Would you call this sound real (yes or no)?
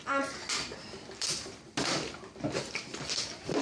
yes